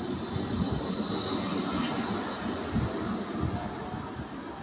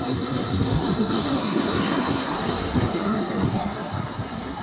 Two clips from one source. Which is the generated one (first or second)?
second